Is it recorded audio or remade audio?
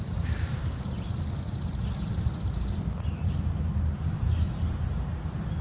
recorded